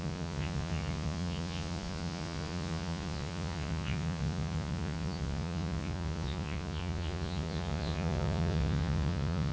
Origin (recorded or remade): remade